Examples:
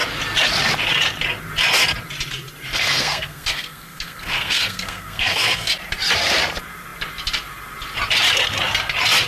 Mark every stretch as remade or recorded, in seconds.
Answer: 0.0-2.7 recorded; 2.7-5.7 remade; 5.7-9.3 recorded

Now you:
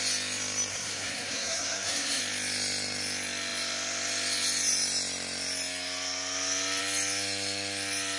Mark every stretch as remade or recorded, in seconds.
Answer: 0.0-0.7 recorded; 0.7-2.2 remade; 2.2-8.2 recorded

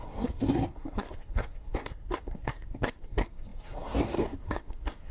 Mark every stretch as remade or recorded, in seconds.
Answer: 0.0-5.1 remade

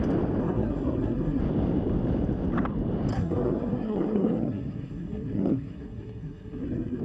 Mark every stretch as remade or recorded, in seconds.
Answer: 0.0-0.4 recorded; 0.4-1.4 remade; 1.4-3.1 recorded; 3.1-7.0 remade

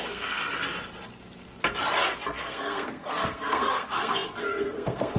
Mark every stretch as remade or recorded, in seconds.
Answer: 0.0-0.4 remade; 0.4-2.4 recorded; 2.4-5.2 remade